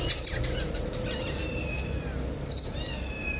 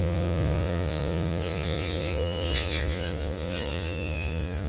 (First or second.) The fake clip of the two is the second